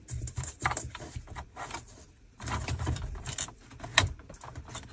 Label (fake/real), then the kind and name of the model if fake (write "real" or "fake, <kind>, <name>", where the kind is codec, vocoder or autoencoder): fake, vocoder, BigVGAN v2